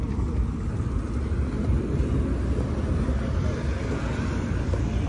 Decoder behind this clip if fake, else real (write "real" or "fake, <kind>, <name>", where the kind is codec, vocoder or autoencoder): real